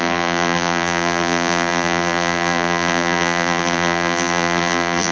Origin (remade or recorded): remade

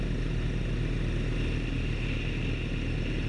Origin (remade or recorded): recorded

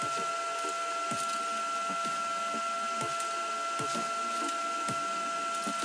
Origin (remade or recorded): recorded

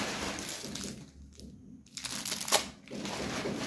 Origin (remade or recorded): recorded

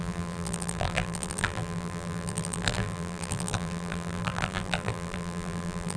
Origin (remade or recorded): remade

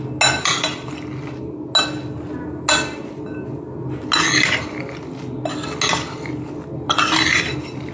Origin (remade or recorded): recorded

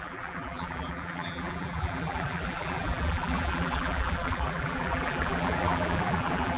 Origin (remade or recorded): remade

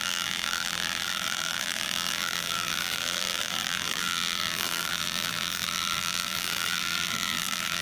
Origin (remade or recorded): remade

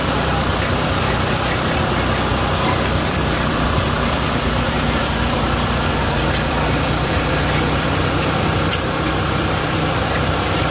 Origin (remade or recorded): remade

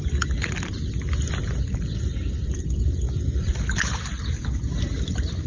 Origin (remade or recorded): remade